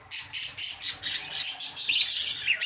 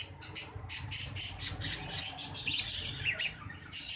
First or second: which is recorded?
first